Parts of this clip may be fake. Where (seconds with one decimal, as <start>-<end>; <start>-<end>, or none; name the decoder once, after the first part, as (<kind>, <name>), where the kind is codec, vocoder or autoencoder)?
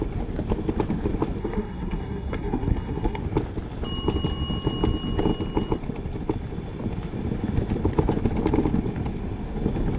1.4-3.2 (codec, SNAC)